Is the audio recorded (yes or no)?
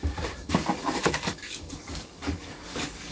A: no